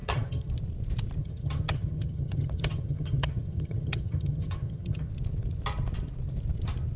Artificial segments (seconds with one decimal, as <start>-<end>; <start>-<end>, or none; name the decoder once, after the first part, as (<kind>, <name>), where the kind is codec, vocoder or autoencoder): 0.0-0.5 (vocoder, HiFi-GAN); 1.2-5.1